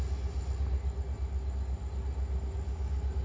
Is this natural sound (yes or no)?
yes